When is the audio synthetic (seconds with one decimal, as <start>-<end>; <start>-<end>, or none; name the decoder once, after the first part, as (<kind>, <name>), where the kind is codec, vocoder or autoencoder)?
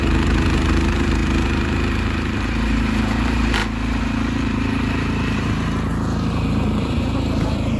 0.0-7.8 (vocoder, BigVGAN v2)